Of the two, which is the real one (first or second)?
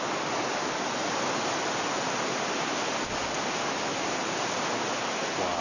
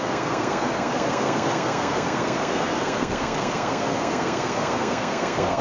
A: first